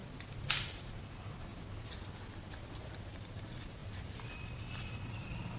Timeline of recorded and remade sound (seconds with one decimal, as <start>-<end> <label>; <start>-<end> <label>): 0.0-0.6 recorded; 0.6-1.5 remade; 1.5-3.1 recorded; 3.1-5.6 remade